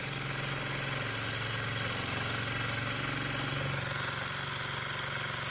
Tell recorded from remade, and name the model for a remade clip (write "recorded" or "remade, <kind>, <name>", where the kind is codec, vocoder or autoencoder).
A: recorded